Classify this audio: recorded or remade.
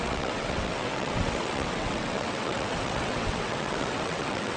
remade